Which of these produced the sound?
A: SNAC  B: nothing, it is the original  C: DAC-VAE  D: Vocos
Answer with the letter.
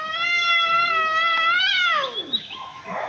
C